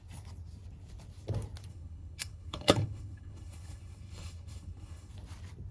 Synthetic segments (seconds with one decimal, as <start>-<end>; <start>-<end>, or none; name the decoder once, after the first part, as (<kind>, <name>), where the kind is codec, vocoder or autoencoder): 1.7-5.1 (codec, HILCodec)